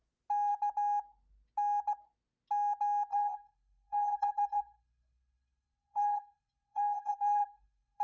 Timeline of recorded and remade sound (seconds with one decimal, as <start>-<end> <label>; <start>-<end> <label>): 0.0-3.1 recorded; 3.1-8.0 remade